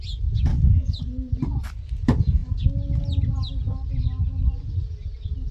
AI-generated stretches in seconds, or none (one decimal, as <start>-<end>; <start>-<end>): 0.5-1.0